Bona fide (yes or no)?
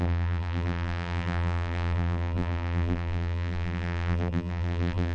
no